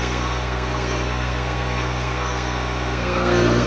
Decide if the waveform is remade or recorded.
remade